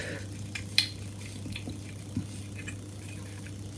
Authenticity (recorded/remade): recorded